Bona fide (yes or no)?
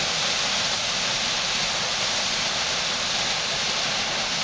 yes